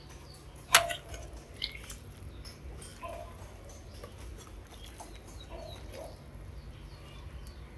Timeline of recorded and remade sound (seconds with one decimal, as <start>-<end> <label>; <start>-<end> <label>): 0.0-7.8 recorded